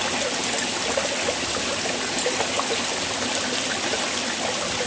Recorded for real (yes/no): yes